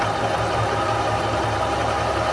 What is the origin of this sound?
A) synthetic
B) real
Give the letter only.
B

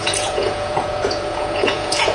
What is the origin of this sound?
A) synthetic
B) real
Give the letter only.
A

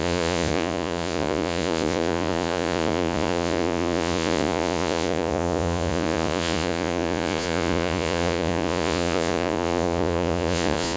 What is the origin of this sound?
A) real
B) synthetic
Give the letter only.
B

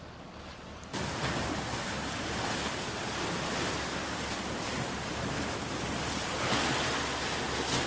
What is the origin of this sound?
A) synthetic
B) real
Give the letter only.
B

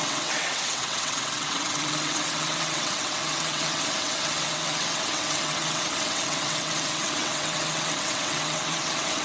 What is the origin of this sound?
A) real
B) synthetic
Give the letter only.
B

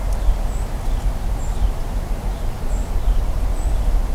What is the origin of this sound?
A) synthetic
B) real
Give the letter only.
B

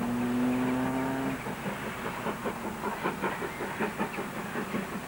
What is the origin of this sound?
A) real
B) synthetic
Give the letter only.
A